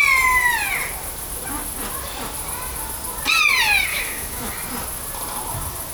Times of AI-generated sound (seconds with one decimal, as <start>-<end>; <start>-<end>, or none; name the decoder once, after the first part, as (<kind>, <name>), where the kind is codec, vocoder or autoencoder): 3.9-4.5 (autoencoder, DAC-VAE)